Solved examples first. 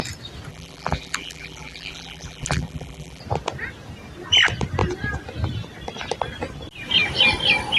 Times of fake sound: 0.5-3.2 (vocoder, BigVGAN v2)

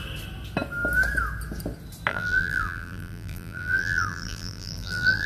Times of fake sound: 2.1-5.3 (vocoder, BigVGAN v2)

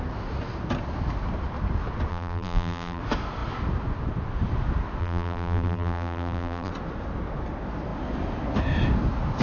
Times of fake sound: 2.1-3.0 (vocoder, BigVGAN v2); 5.0-6.7